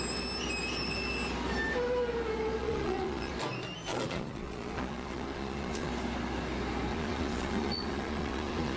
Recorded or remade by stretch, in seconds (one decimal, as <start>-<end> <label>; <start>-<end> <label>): 0.0-2.6 recorded; 2.6-3.3 remade; 3.3-3.9 recorded; 3.9-5.9 remade; 5.9-6.9 recorded; 6.9-8.8 remade